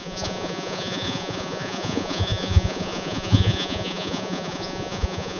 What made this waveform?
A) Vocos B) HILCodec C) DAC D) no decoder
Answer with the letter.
A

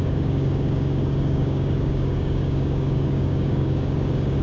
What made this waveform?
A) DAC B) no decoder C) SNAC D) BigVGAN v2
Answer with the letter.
A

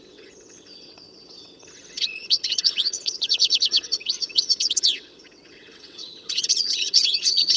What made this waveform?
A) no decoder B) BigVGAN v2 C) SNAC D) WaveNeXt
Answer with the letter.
D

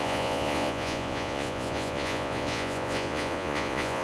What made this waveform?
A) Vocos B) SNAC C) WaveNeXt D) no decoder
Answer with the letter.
A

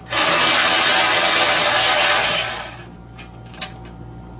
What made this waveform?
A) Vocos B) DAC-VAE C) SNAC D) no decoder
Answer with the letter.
D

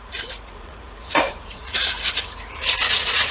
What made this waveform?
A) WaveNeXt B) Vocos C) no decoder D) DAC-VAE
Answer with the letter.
B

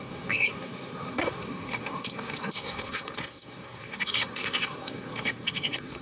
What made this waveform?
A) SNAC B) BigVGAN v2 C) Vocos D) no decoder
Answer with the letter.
A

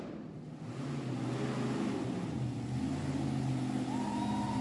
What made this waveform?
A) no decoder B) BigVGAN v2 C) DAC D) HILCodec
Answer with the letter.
A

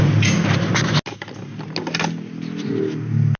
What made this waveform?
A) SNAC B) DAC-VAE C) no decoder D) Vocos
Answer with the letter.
C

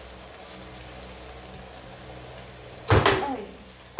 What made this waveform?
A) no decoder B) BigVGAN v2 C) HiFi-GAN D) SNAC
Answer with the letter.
A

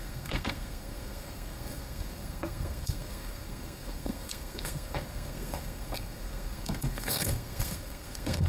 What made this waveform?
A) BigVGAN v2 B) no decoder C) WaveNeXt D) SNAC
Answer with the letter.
D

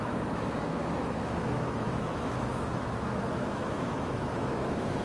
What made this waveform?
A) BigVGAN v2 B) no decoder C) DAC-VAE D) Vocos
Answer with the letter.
C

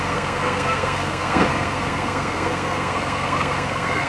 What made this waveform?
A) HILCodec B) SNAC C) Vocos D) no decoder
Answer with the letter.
B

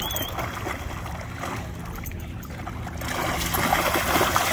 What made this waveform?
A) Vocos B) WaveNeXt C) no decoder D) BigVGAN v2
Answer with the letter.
C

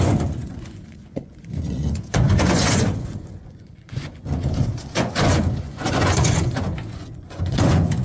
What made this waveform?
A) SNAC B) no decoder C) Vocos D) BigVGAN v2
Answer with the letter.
C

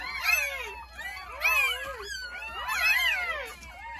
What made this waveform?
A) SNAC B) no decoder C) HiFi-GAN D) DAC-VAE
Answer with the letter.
B